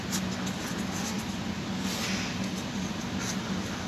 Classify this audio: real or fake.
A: real